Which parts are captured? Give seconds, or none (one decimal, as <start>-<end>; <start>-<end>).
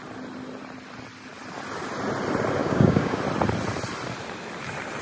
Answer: 0.0-2.6; 3.2-5.0